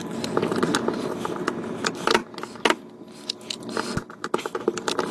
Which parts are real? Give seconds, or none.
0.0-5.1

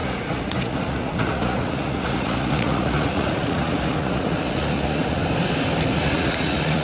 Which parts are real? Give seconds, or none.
5.2-6.0

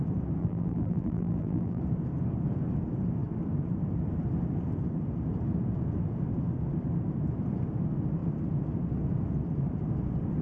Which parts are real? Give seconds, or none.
0.0-0.4; 1.8-10.4

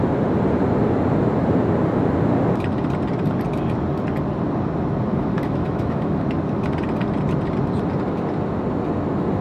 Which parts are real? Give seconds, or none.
0.0-5.1; 6.2-9.4